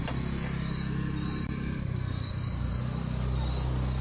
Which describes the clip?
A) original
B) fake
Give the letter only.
A